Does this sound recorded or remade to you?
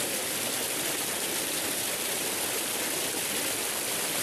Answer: recorded